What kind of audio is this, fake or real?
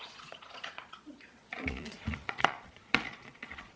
fake